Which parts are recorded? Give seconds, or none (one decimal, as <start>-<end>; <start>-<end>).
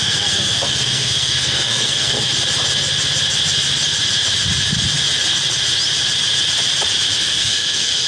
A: 2.3-7.2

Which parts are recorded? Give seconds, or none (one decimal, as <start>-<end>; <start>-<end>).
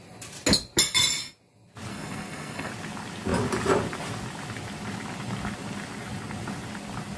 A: 0.0-1.9; 2.7-7.2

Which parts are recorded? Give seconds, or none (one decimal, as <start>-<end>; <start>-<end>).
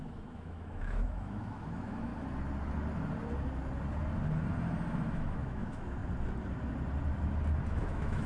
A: 2.1-5.1; 6.0-7.7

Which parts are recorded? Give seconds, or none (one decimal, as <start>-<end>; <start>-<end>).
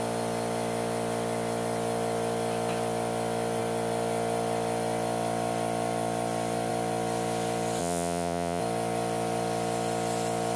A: 0.0-7.8; 8.6-10.6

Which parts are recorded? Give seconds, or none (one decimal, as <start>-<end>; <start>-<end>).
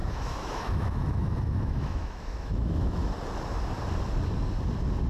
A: 3.1-5.1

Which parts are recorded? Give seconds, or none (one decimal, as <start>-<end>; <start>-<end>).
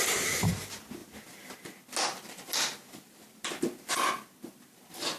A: 0.0-5.2